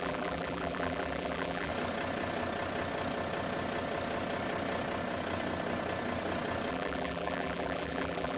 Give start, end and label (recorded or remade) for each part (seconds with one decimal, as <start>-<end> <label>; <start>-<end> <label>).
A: 0.0-1.7 remade; 1.7-6.7 recorded; 6.7-8.4 remade